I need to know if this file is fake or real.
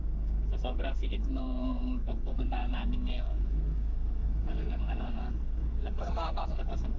fake